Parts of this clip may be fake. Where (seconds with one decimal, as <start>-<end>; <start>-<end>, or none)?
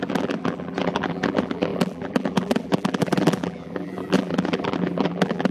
0.0-5.5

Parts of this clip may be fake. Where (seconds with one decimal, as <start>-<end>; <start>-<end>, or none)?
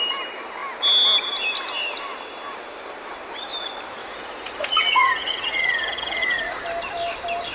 4.0-6.6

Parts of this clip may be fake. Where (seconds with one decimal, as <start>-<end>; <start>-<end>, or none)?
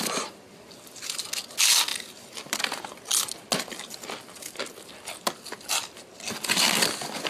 none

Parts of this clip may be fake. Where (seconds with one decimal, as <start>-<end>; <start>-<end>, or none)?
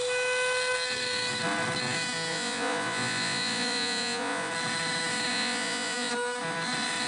2.3-4.5; 5.3-6.1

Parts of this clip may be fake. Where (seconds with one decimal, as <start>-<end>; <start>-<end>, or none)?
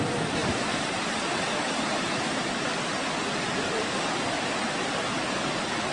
0.4-1.3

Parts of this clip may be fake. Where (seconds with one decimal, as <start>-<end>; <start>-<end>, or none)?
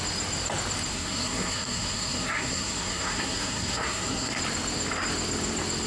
0.9-4.4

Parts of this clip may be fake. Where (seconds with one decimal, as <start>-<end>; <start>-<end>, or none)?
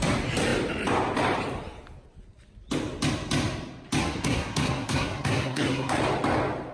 4.0-6.0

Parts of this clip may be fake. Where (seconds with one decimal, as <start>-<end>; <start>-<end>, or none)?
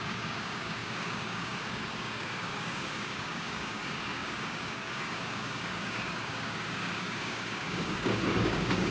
0.0-8.9